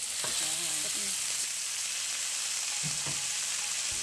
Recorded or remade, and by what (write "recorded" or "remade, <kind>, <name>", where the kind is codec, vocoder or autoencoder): recorded